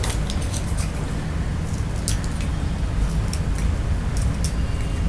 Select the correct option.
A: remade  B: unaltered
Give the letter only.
B